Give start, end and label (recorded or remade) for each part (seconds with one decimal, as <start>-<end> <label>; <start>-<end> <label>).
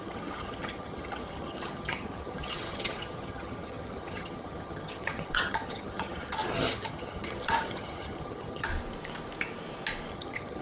0.0-8.7 remade; 8.7-10.1 recorded; 10.1-10.6 remade